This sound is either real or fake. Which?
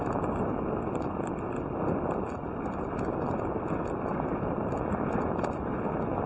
real